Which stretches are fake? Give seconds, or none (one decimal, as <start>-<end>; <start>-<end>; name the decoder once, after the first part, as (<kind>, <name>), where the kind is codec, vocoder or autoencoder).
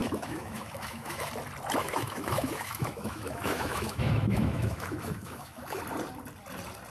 0.0-1.3 (autoencoder, DAC-VAE); 1.8-5.8